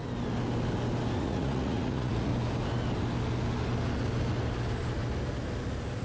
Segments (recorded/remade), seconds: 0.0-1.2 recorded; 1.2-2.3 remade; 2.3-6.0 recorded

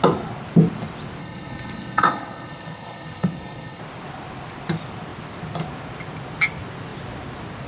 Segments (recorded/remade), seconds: 0.0-1.2 recorded; 1.2-3.8 remade; 3.8-7.7 recorded

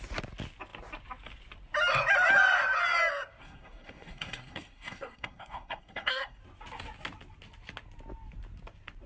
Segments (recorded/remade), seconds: 0.0-3.4 recorded; 3.4-6.4 remade; 6.4-9.1 recorded

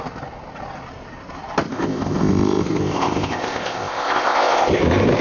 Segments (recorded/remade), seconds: 0.0-1.7 recorded; 1.7-4.8 remade; 4.8-5.2 recorded

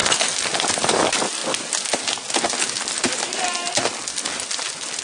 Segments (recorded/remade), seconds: 0.0-0.6 recorded; 0.6-1.4 remade; 1.4-4.4 recorded; 4.4-5.0 remade